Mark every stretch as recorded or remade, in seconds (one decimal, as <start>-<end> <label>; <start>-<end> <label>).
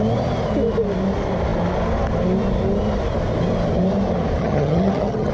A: 0.0-4.4 recorded; 4.4-5.3 remade